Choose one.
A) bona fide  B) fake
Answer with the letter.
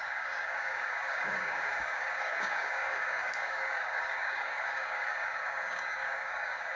B